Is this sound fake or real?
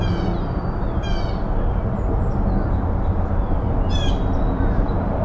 real